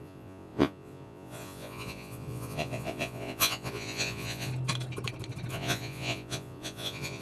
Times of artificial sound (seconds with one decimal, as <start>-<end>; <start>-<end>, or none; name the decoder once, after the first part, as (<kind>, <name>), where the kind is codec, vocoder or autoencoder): 0.0-4.5 (vocoder, Vocos); 5.5-7.2